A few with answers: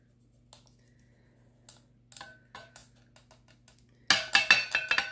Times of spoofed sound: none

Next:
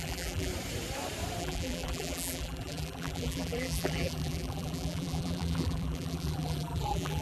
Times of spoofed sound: 0.0-0.5 (vocoder, BigVGAN v2); 1.4-7.2

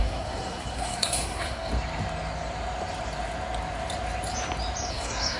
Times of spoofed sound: 0.0-1.7 (codec, SNAC); 4.9-5.4

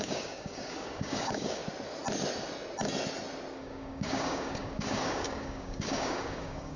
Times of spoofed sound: 0.0-1.6 (codec, DAC); 3.6-6.8

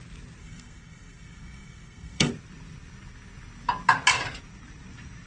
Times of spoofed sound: 0.4-2.3 (codec, SNAC)

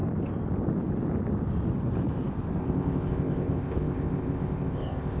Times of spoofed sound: 2.6-5.2 (codec, ZipCodec)